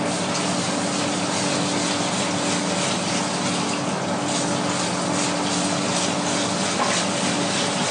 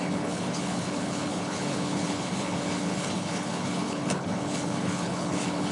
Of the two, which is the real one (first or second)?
first